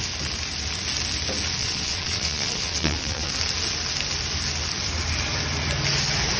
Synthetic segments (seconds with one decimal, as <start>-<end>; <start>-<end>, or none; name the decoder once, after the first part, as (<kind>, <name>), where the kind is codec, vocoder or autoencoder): 1.6-3.3 (vocoder, WaveNeXt)

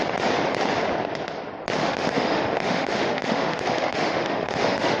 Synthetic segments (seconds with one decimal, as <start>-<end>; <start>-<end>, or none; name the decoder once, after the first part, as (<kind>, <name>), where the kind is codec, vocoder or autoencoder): 1.8-5.0 (autoencoder, DAC-VAE)

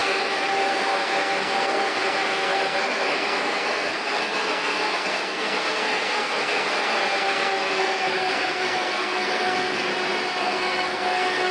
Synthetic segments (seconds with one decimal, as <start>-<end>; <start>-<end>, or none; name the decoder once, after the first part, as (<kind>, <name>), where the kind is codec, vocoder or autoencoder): 0.0-9.9 (codec, SNAC); 10.4-11.5

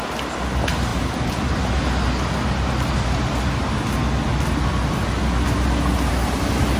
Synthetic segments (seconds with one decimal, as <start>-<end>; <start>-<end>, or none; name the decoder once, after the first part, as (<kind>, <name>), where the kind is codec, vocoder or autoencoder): none

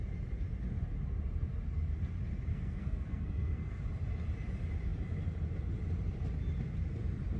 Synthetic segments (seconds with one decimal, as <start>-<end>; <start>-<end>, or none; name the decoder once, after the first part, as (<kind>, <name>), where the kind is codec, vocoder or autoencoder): 2.5-3.8 (codec, SNAC)